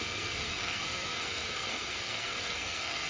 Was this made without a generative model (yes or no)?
no